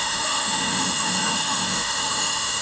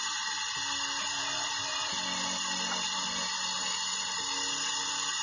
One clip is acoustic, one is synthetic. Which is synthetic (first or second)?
first